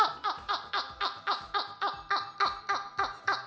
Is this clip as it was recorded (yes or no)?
yes